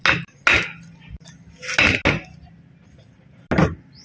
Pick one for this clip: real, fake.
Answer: real